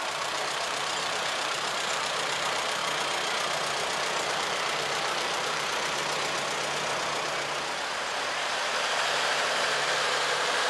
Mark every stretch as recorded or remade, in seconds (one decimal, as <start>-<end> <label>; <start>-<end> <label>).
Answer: 0.0-2.8 remade; 2.8-4.3 recorded; 4.3-6.0 remade; 6.0-8.2 recorded; 8.2-10.7 remade

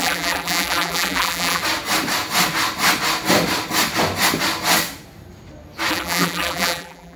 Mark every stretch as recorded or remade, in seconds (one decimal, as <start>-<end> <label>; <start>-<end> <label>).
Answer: 0.0-1.6 remade; 1.6-5.9 recorded; 5.9-7.2 remade

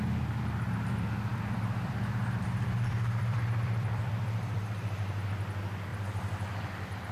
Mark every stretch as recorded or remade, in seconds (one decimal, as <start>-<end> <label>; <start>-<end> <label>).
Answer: 0.0-1.3 recorded; 1.3-4.6 remade; 4.6-5.9 recorded; 5.9-7.1 remade

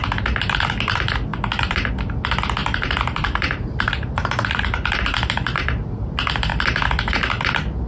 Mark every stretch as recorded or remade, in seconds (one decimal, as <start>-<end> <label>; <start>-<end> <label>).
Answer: 0.0-1.3 recorded; 1.3-1.9 remade; 1.9-2.6 recorded; 2.6-6.1 remade; 6.1-7.9 recorded